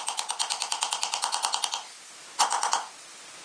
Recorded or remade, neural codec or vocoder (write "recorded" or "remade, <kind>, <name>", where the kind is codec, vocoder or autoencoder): recorded